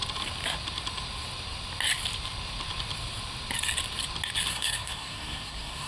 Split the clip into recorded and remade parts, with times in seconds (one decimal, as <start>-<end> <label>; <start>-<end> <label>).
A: 0.0-4.5 recorded; 4.5-5.9 remade